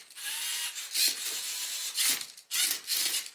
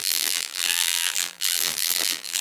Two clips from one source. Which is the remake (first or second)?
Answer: second